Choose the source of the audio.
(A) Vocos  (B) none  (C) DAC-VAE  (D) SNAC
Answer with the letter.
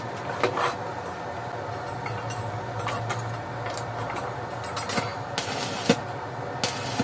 B